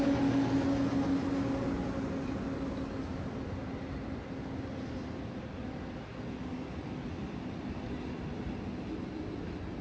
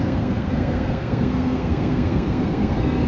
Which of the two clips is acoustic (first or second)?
first